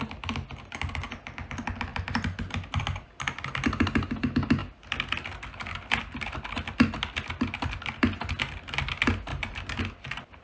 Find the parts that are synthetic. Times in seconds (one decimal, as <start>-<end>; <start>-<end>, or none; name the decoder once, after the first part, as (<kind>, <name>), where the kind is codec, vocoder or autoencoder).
none